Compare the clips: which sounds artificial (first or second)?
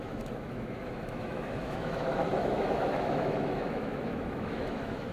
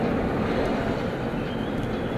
first